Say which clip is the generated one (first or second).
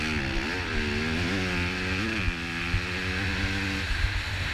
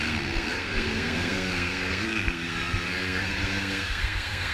second